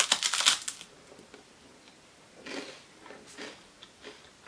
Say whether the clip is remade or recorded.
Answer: recorded